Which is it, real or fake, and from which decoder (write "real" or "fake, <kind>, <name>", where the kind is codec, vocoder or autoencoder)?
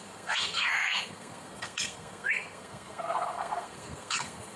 fake, codec, SNAC